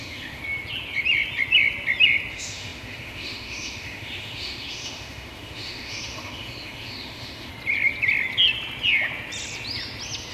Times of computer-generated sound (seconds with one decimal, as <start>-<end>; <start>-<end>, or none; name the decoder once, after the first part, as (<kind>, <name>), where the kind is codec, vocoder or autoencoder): 0.0-0.4 (autoencoder, DAC-VAE); 2.3-7.5